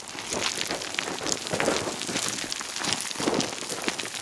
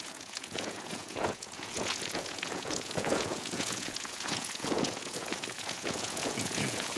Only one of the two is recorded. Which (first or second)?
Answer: first